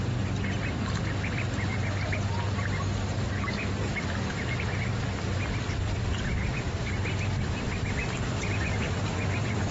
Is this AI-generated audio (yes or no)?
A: no